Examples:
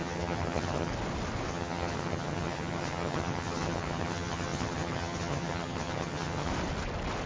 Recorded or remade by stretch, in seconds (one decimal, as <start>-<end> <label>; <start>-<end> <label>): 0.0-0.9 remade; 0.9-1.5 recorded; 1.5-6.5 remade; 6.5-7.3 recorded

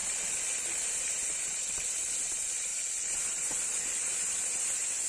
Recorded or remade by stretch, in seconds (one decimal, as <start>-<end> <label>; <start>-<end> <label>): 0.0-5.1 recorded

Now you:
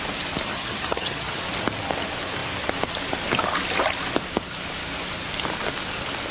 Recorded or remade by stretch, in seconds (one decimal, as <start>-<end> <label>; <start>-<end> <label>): 0.0-0.5 recorded; 0.5-1.4 remade; 1.4-6.3 recorded

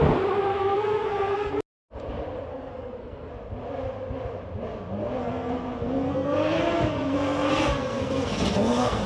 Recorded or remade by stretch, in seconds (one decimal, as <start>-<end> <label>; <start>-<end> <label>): 0.0-0.5 recorded; 0.5-1.5 remade; 1.5-2.5 recorded; 2.5-3.3 remade; 3.3-5.2 recorded; 5.2-9.1 remade

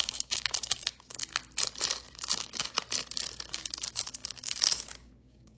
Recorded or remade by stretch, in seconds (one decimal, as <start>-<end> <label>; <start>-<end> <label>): 0.0-1.2 remade; 1.2-2.1 recorded; 2.1-2.7 remade; 2.7-3.5 recorded; 3.5-5.6 remade

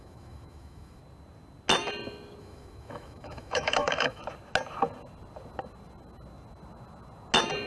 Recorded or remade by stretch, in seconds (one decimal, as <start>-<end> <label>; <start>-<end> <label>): 0.0-1.0 remade; 1.0-2.4 recorded; 2.4-4.2 remade; 4.2-7.7 recorded

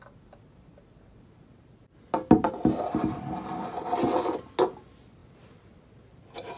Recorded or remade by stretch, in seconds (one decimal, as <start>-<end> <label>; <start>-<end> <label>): 0.0-6.6 recorded

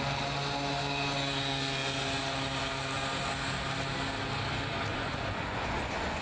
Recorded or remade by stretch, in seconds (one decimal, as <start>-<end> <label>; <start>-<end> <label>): 0.0-4.9 recorded; 4.9-6.2 remade